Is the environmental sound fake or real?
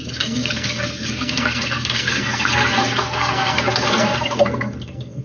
fake